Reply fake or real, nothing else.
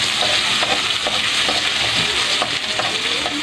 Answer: real